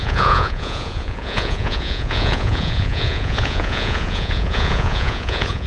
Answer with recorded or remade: remade